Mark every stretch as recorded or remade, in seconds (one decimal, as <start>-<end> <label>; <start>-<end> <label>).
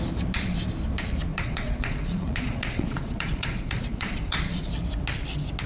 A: 0.0-1.3 recorded; 1.3-4.7 remade; 4.7-5.7 recorded